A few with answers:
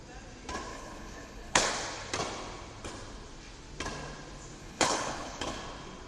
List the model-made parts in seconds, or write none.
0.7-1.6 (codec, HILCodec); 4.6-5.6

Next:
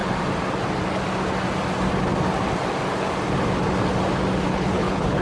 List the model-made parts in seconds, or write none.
4.5-5.2 (codec, HILCodec)

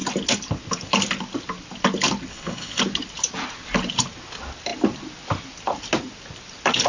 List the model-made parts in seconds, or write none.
2.3-2.8 (codec, HILCodec)

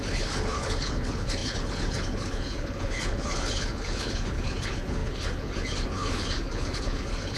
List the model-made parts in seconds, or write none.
0.0-7.4 (codec, HILCodec)

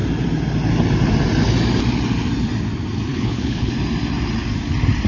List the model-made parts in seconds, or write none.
3.1-3.7 (codec, HILCodec)

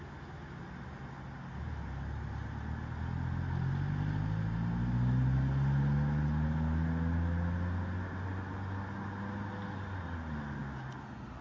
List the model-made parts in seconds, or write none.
none

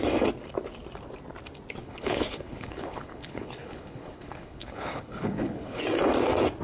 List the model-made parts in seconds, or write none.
1.8-5.8 (codec, HILCodec)